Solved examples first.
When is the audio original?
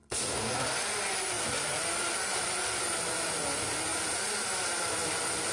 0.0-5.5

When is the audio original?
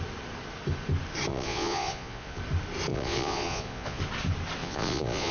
0.0-1.3; 2.4-2.9; 4.0-4.6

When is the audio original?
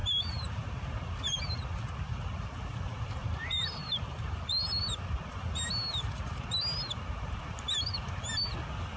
1.4-3.2; 5.0-9.0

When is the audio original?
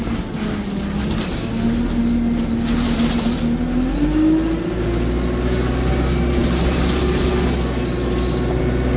0.0-9.0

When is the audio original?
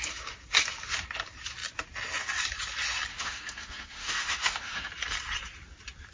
0.0-3.1; 4.9-6.1